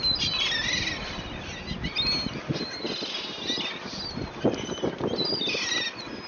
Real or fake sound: real